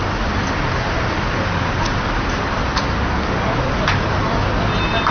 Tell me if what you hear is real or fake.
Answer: real